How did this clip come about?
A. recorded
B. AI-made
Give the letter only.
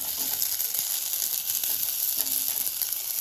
A